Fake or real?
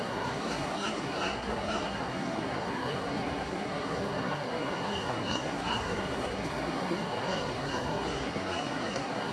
fake